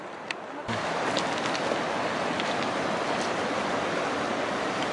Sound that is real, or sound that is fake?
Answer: real